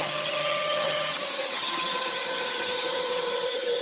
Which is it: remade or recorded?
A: remade